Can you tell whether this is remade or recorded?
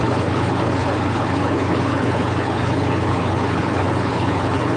remade